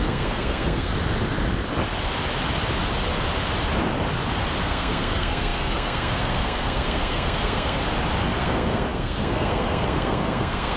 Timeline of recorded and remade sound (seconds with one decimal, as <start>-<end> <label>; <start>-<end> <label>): 0.0-0.9 remade; 0.9-4.6 recorded; 4.6-7.8 remade; 7.8-8.4 recorded; 8.4-10.8 remade